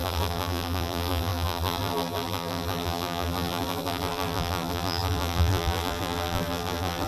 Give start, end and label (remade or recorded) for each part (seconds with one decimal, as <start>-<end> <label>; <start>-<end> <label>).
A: 0.0-7.1 remade